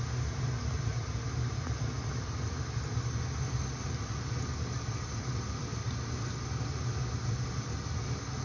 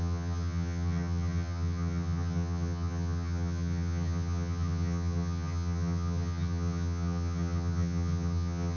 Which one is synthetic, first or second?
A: second